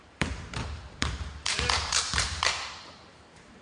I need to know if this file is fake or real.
fake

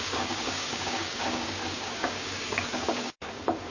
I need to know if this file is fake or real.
fake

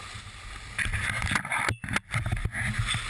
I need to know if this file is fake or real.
real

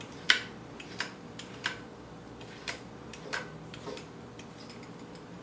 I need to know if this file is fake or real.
fake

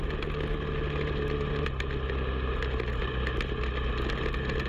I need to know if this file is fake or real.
real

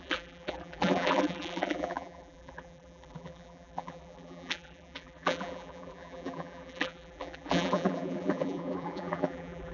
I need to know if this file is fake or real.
fake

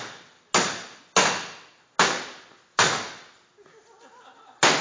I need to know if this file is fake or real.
real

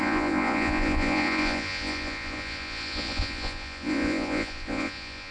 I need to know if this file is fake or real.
fake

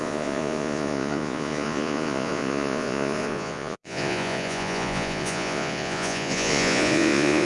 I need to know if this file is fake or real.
fake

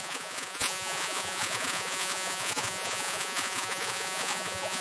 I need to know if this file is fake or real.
fake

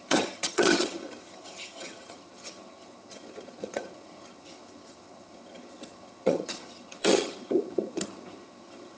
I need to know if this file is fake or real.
fake